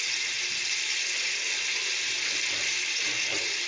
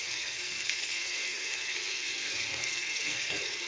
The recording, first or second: first